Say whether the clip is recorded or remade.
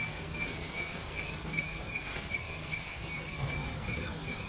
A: remade